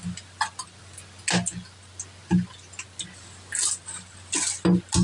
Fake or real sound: real